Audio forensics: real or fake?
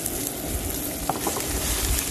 real